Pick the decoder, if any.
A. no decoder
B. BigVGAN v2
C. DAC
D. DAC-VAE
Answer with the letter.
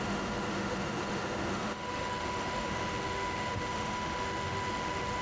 D